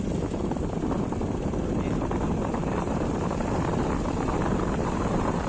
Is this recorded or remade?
remade